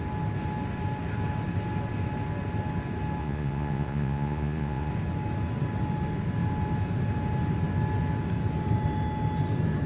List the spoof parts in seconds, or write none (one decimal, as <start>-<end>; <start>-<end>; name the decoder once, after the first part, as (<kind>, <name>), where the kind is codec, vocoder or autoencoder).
3.2-4.9 (vocoder, Vocos)

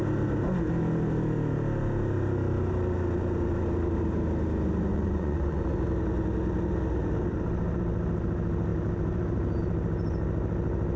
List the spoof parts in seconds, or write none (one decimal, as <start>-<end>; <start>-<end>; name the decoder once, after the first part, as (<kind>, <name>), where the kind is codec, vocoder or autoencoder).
4.9-5.6 (vocoder, Vocos)

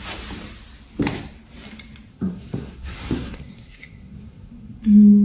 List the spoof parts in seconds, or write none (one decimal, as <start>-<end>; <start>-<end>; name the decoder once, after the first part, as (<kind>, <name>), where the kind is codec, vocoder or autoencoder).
2.1-4.8 (codec, SNAC)

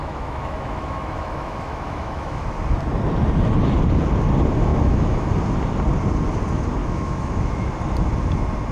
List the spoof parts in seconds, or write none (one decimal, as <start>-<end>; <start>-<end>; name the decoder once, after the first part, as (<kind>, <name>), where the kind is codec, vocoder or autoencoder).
0.0-2.4 (autoencoder, DAC-VAE); 4.7-5.3; 6.8-7.7

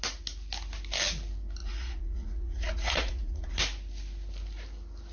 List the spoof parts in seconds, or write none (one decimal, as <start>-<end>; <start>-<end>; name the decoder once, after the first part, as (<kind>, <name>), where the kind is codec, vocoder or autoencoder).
1.6-3.5 (vocoder, Vocos)

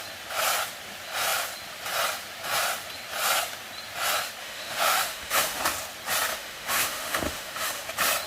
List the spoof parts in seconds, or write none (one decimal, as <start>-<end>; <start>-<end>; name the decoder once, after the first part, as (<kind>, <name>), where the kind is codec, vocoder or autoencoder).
4.4-5.6 (autoencoder, DAC-VAE); 6.3-7.9